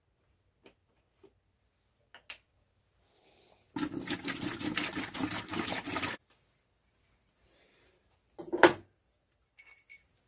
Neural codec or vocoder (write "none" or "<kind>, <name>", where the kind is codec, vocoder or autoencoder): none